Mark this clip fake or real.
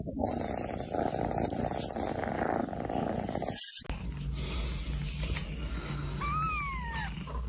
real